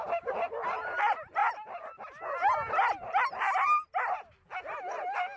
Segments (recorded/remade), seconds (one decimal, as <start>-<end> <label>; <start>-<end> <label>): 0.0-5.4 recorded